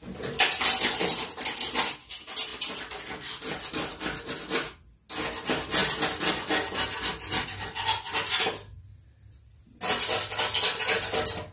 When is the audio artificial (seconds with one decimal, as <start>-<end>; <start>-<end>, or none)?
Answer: none

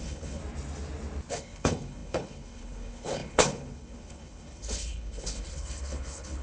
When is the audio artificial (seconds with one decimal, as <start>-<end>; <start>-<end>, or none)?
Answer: 0.0-0.4; 1.3-6.4

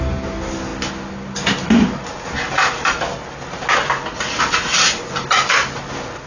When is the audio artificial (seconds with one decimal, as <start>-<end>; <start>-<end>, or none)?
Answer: none

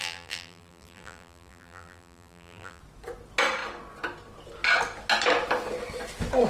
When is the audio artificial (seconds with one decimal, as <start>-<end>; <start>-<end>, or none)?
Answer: 0.0-2.8

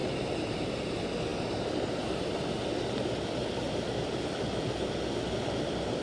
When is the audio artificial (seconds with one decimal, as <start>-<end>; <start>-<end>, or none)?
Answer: 0.0-0.6

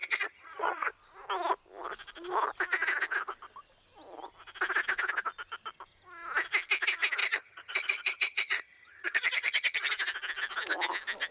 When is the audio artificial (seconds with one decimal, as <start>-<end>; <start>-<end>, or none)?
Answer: 0.0-0.9; 7.2-9.9